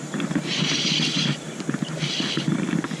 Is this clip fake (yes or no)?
no